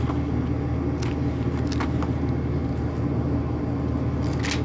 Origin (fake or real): real